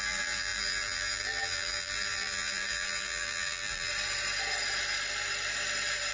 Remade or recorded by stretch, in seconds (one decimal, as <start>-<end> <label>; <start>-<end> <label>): 0.0-3.9 remade; 3.9-6.1 recorded